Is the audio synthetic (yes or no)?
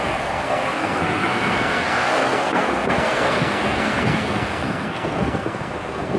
yes